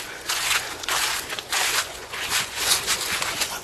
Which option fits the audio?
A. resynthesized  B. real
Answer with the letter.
A